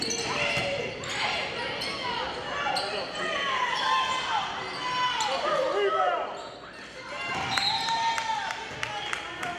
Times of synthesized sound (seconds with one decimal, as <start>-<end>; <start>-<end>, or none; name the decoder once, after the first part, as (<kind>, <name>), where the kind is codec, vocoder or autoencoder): none